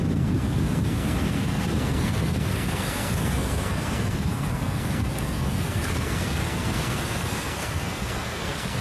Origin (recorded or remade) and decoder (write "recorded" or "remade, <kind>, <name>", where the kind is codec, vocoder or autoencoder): remade, codec, SNAC